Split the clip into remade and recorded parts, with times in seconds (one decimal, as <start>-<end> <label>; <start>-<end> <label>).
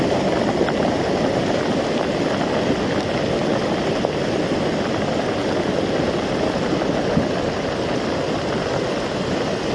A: 0.0-9.7 recorded